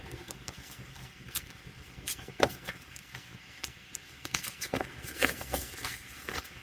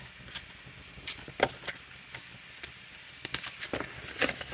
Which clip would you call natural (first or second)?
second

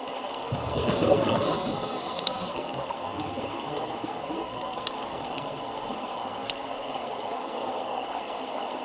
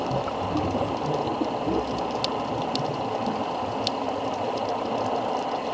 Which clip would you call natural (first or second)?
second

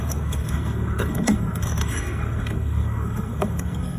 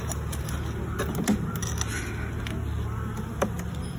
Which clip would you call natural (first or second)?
second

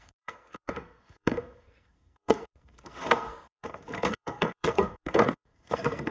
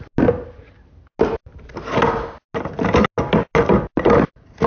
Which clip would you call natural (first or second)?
second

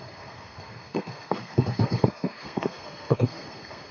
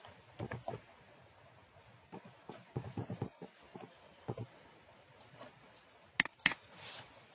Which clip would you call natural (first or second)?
second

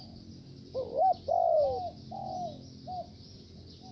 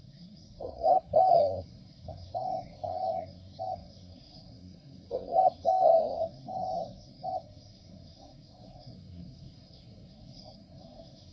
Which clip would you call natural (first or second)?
first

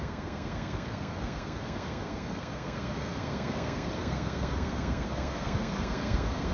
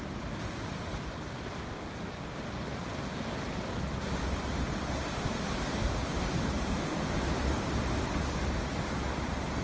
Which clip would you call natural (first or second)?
second